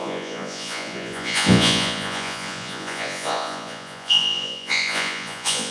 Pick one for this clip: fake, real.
fake